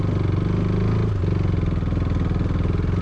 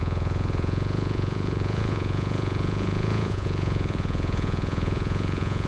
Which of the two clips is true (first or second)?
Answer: first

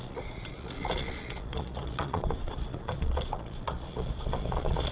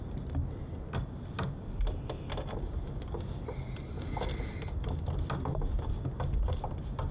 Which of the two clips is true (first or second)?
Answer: second